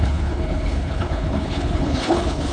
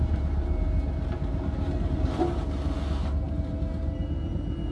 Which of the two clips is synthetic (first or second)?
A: first